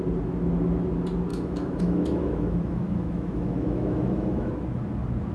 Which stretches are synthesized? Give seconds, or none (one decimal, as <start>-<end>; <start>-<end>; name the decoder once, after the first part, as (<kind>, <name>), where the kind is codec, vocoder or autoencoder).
1.3-4.5 (autoencoder, DAC-VAE)